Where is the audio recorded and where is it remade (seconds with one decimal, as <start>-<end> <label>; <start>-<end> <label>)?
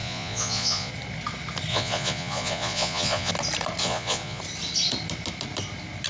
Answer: 0.0-0.9 remade; 0.9-1.7 recorded; 1.7-3.3 remade; 3.3-3.8 recorded; 3.8-4.4 remade; 4.4-6.1 recorded